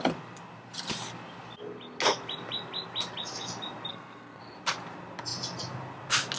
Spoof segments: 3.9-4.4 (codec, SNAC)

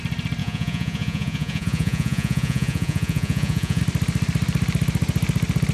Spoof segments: 0.4-3.8 (vocoder, Vocos)